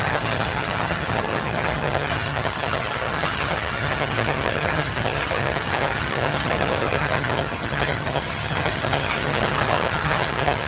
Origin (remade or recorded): remade